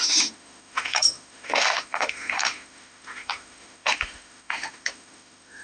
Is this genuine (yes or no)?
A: no